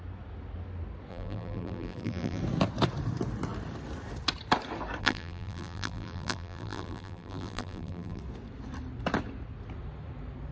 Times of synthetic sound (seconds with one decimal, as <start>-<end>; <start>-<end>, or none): 1.1-2.4; 5.0-8.2